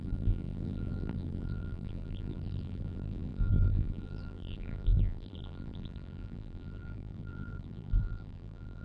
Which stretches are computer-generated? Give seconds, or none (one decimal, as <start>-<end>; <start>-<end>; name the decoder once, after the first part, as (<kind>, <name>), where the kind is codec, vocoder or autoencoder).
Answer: 0.0-8.8 (vocoder, BigVGAN v2)